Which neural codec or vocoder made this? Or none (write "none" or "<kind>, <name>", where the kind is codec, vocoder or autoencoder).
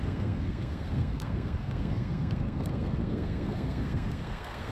codec, SNAC